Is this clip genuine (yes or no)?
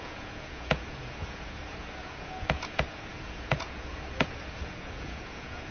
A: no